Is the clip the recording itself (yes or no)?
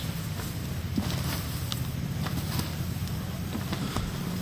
yes